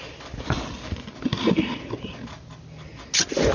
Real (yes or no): yes